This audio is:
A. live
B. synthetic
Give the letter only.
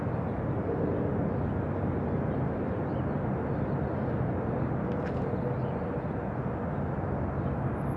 A